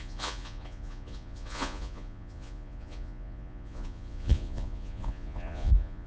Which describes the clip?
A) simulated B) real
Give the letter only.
A